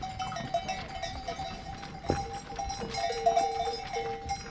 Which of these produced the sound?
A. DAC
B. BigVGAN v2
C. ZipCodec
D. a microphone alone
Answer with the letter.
D